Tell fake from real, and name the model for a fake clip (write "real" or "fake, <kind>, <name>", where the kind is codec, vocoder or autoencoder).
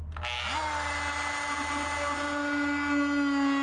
real